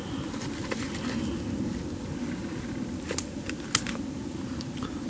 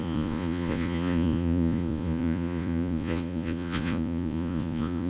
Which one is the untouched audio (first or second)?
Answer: first